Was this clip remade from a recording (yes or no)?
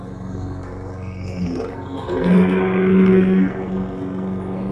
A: yes